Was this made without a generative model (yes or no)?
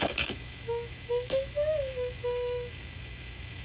no